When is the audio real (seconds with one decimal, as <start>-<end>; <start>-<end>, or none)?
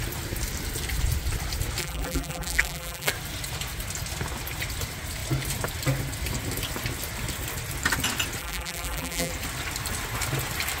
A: 0.0-1.8; 3.1-8.4; 9.3-10.8